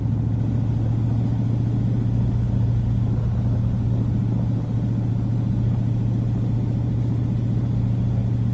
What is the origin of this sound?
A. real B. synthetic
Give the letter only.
A